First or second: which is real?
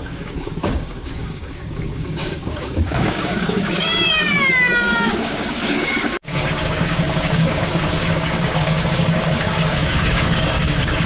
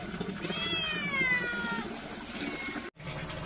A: second